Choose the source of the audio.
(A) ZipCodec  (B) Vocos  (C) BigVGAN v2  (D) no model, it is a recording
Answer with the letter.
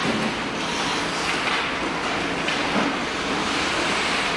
D